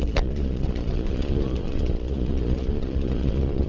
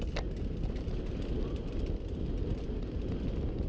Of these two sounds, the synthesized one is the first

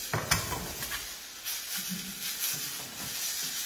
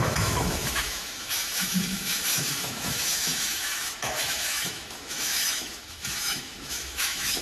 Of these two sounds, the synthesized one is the second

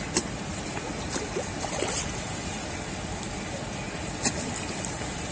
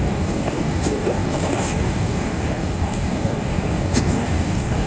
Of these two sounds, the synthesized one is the second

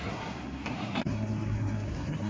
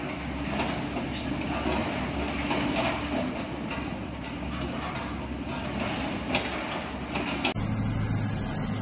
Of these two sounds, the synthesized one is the first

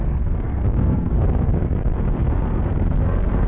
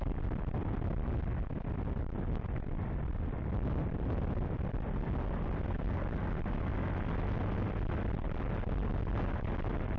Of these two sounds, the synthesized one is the first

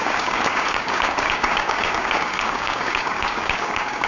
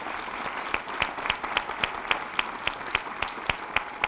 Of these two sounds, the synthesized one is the first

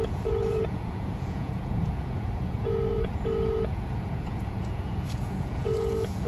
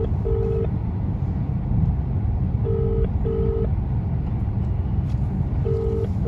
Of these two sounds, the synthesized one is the first